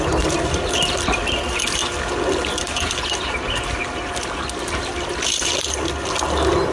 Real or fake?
real